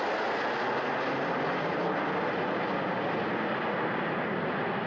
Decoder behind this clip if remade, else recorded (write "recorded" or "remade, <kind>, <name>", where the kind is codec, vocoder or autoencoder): recorded